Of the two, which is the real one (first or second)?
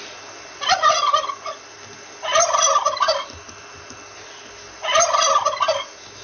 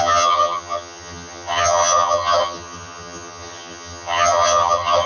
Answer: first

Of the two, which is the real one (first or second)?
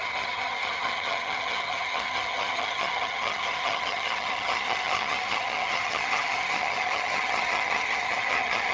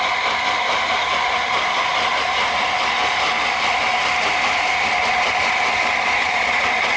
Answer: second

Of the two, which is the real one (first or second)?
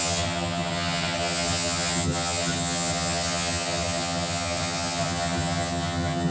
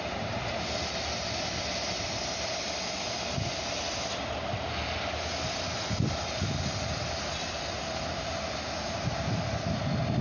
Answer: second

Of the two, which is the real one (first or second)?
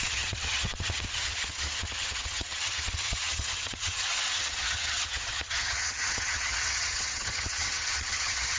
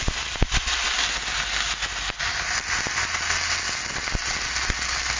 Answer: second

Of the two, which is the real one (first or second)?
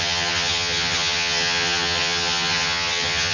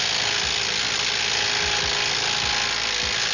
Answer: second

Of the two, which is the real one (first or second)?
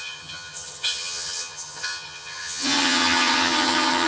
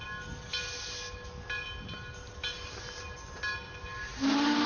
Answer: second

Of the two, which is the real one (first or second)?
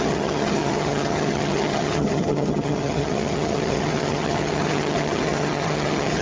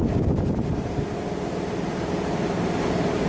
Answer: second